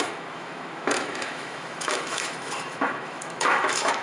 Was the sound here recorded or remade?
remade